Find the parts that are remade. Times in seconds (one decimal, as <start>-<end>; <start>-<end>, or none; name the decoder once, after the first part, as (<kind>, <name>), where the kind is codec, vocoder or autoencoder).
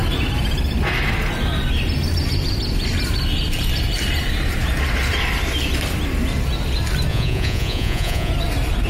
7.1-8.3 (vocoder, Vocos)